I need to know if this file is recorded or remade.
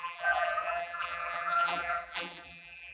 remade